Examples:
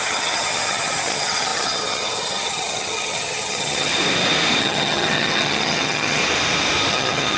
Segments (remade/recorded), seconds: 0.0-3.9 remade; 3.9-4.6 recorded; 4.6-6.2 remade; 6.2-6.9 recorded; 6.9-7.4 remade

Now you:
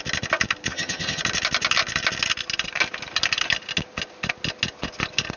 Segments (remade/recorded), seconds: 0.0-0.7 recorded; 0.7-1.2 remade; 1.2-5.4 recorded